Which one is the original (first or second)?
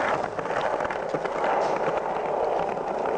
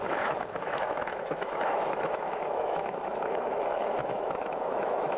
first